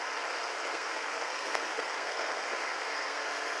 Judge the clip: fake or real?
fake